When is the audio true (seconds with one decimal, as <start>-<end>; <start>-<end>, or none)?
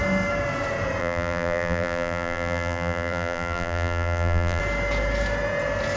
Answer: 0.0-1.0; 4.6-6.0